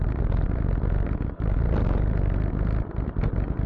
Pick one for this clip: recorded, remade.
recorded